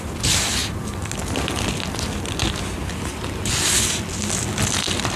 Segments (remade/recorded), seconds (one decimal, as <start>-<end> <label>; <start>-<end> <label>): 0.0-5.2 recorded